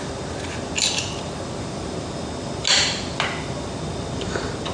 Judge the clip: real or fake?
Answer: real